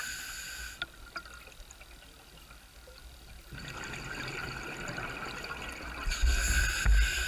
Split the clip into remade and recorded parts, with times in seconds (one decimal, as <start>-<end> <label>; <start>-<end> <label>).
0.0-4.4 recorded; 4.4-5.6 remade; 5.6-7.3 recorded